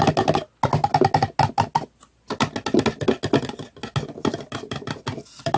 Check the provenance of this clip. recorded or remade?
recorded